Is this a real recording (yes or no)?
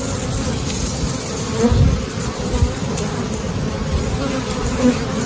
yes